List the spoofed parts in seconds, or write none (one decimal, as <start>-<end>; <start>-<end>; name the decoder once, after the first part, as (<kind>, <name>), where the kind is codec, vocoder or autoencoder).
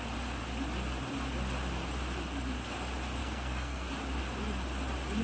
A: 3.2-3.9 (codec, SNAC)